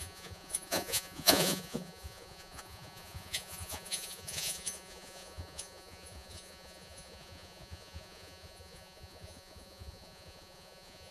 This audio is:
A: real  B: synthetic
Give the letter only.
B